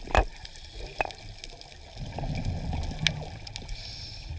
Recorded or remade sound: recorded